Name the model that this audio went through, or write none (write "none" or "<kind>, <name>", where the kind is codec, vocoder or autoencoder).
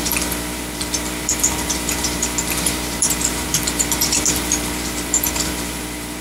vocoder, BigVGAN v2